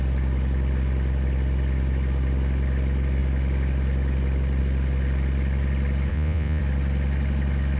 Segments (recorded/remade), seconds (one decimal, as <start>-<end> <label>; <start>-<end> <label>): 0.0-6.1 recorded; 6.1-6.6 remade; 6.6-7.8 recorded